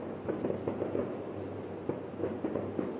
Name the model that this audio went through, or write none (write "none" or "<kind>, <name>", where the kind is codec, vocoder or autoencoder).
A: none